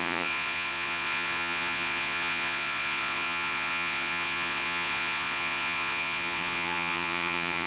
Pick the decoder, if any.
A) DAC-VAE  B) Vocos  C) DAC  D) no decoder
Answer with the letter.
B